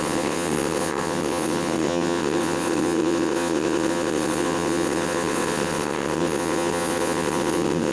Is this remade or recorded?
remade